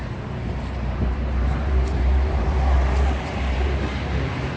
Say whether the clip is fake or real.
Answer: fake